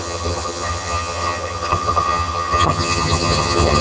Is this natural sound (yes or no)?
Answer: no